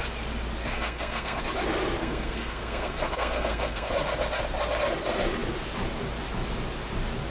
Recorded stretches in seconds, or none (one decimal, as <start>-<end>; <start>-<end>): 0.0-0.7; 1.4-2.0; 3.9-7.3